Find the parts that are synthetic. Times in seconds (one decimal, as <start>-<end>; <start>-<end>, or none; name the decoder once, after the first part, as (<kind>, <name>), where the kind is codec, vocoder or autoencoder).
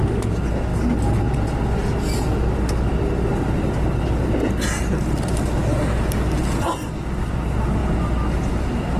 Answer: none